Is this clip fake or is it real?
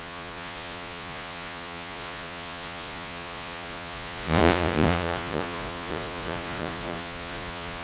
fake